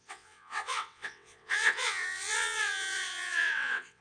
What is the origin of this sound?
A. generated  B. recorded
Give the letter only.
A